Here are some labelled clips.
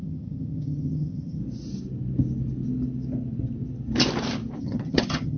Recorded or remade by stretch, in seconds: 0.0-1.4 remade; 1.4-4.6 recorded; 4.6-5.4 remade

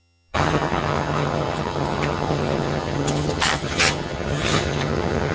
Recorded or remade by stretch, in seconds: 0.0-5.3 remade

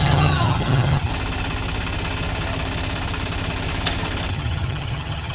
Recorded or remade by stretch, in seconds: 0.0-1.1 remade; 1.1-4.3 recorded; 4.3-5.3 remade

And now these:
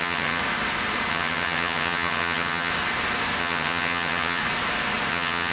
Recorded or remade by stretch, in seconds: 0.0-0.4 remade; 0.4-1.1 recorded; 1.1-2.7 remade; 2.7-3.4 recorded; 3.4-4.4 remade; 4.4-5.1 recorded; 5.1-5.5 remade

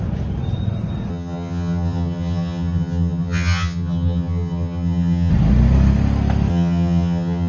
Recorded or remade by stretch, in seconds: 0.0-1.1 recorded; 1.1-5.3 remade; 5.3-6.5 recorded; 6.5-7.5 remade